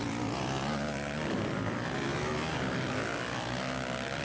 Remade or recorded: recorded